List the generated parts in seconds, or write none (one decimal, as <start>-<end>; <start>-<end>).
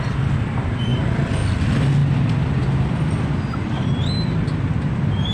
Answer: none